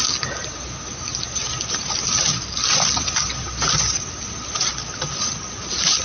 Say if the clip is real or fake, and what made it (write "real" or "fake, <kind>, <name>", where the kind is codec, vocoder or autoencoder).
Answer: real